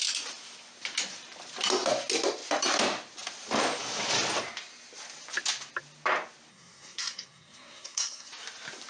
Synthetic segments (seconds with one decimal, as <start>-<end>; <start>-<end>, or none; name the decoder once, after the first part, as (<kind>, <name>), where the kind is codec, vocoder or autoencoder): 6.5-8.3 (codec, SNAC)

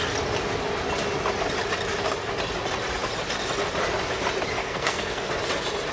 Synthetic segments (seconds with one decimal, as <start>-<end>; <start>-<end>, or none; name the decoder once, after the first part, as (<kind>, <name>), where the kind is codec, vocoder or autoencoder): 4.6-5.3 (codec, SNAC)

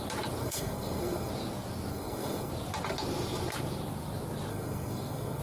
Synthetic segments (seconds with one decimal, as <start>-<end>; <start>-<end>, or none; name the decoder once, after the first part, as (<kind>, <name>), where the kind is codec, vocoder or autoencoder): 0.4-1.3 (codec, SNAC); 1.9-2.5; 4.5-5.4

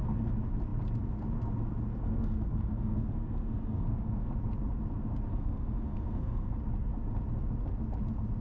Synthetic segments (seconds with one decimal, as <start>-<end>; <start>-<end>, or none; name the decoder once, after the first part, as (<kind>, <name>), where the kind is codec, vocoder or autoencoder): 1.9-4.3 (codec, SNAC); 5.3-6.5

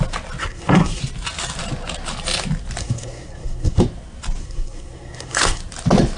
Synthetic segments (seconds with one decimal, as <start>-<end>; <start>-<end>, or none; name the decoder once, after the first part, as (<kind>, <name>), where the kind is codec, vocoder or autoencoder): 0.4-1.0 (codec, SNAC); 2.8-3.8; 4.4-5.6

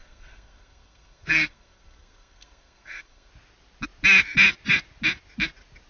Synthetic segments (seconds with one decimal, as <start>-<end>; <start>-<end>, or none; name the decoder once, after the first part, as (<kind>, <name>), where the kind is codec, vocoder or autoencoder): 0.0-3.3 (codec, SNAC)

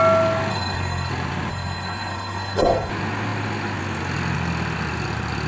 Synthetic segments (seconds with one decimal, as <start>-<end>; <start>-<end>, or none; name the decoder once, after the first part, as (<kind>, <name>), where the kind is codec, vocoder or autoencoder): 0.5-1.1 (codec, SNAC); 1.5-2.9

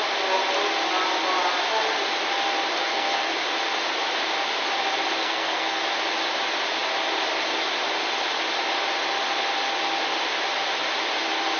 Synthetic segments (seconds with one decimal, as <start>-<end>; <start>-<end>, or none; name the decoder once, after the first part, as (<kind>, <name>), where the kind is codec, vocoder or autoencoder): 2.8-3.3 (codec, SNAC); 5.2-5.8